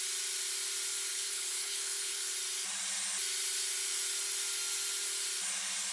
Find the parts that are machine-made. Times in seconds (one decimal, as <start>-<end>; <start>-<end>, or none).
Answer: 1.1-2.3

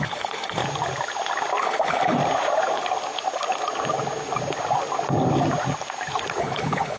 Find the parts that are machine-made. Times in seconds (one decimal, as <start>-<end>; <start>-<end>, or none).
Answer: 0.0-0.6; 1.6-2.2; 6.4-7.0